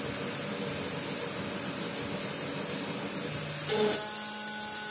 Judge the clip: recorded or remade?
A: recorded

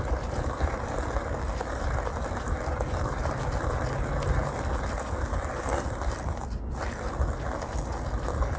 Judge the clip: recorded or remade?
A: recorded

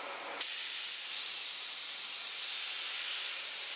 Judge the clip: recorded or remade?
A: recorded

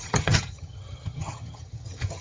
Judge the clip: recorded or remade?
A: remade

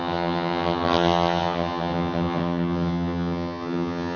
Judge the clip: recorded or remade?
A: remade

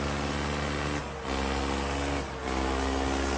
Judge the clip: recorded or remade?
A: recorded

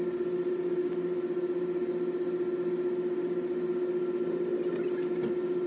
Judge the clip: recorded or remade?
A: recorded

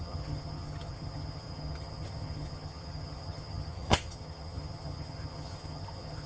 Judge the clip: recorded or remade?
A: remade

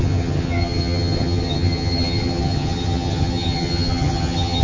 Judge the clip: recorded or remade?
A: remade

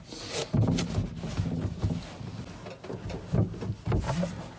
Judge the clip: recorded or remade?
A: recorded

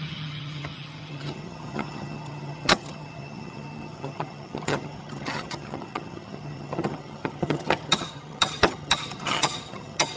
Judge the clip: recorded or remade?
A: remade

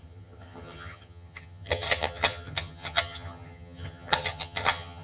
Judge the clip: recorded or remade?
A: remade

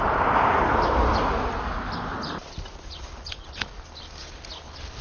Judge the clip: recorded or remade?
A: recorded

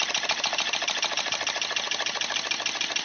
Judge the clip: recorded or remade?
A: recorded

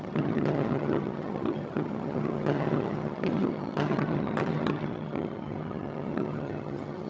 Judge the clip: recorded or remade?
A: remade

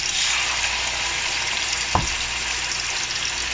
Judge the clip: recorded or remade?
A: recorded